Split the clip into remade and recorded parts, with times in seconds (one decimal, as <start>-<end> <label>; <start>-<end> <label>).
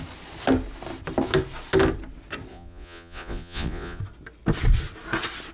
0.0-2.5 recorded; 2.5-4.0 remade; 4.0-5.5 recorded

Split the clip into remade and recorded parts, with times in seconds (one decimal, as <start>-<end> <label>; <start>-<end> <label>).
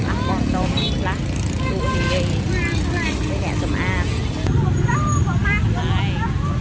0.0-6.6 recorded